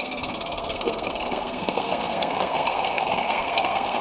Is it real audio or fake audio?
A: fake